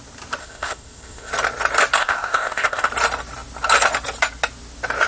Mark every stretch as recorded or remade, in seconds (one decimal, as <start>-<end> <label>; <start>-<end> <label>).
0.0-0.4 recorded; 0.4-1.3 remade; 1.3-2.0 recorded; 2.0-2.9 remade; 2.9-5.1 recorded